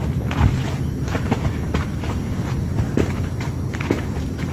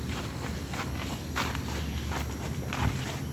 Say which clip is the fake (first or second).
first